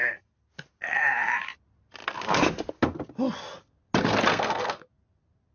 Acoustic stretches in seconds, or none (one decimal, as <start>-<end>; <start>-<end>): 0.0-4.3; 4.9-5.5